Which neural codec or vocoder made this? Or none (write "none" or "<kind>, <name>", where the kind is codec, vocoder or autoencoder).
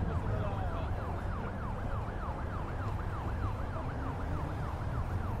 none